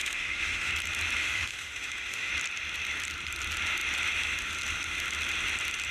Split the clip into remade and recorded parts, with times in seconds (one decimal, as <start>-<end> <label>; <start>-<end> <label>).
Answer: 0.0-0.7 remade; 0.7-1.2 recorded; 1.2-2.3 remade; 2.3-5.9 recorded